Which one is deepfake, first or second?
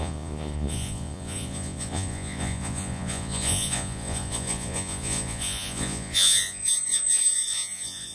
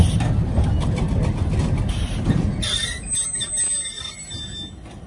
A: first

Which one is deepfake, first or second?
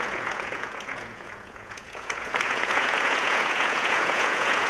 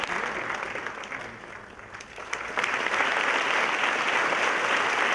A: first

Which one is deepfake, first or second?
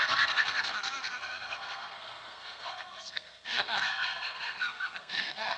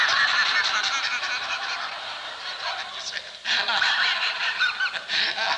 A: first